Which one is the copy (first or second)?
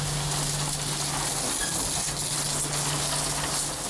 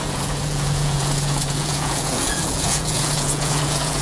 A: second